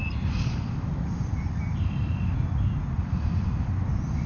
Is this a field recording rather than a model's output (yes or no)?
yes